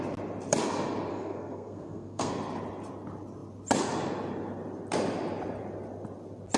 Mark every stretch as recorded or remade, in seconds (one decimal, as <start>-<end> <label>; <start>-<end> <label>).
0.0-1.1 recorded; 1.1-2.3 remade; 2.3-6.6 recorded